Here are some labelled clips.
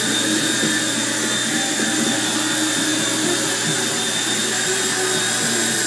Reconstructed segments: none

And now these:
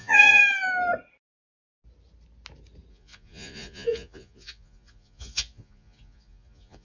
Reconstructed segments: 0.0-0.4 (vocoder, Vocos); 2.9-6.8